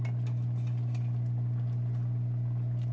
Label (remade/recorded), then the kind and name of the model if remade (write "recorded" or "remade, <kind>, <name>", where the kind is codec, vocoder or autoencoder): recorded